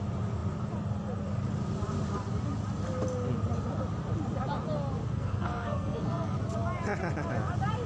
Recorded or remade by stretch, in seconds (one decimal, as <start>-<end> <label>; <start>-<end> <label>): 0.0-5.0 recorded; 5.0-6.4 remade; 6.4-7.9 recorded